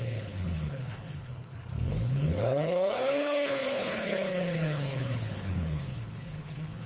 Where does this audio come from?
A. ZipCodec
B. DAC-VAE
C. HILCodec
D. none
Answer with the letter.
C